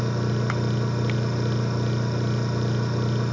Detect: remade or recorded recorded